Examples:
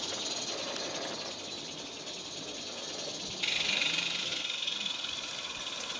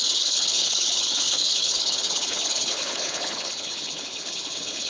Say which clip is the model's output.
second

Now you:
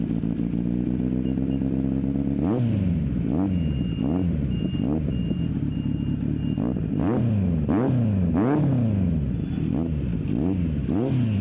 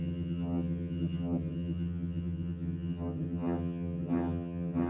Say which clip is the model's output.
second